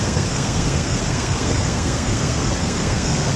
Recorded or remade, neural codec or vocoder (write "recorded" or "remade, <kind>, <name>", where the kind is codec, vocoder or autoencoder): remade, codec, SNAC